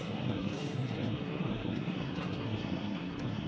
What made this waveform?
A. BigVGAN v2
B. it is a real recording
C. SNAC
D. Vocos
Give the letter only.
C